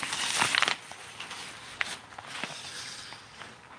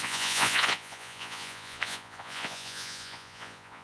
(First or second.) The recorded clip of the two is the first